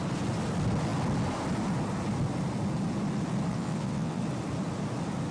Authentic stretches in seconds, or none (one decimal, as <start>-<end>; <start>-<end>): 0.0-3.5; 4.2-5.3